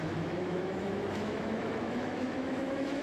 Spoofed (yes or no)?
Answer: yes